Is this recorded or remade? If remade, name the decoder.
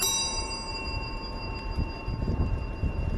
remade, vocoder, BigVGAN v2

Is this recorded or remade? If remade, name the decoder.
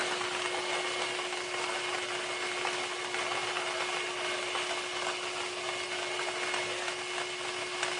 recorded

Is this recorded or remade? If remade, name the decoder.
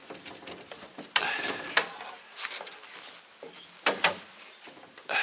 recorded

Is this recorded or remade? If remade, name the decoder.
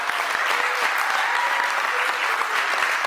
recorded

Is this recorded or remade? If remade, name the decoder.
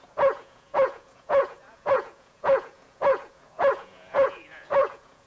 remade, vocoder, Vocos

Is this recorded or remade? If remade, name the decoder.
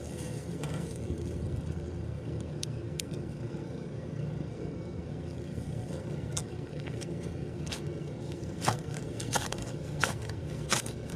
remade, codec, SNAC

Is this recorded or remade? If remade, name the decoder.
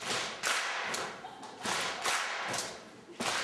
recorded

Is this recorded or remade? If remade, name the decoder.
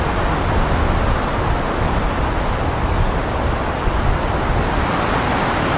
recorded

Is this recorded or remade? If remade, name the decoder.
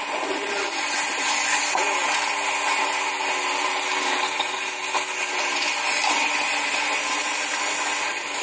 recorded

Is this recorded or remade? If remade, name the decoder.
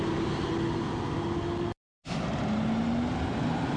recorded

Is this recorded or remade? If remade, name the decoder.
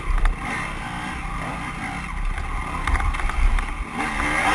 recorded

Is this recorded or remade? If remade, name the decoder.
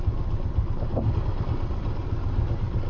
recorded